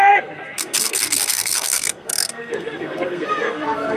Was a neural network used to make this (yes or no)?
yes